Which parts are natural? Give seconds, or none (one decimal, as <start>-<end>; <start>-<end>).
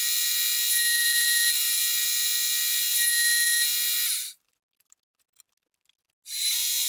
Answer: 0.0-1.0; 1.8-6.9